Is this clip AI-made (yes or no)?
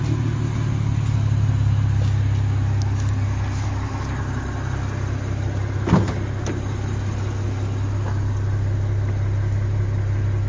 no